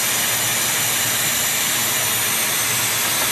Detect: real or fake real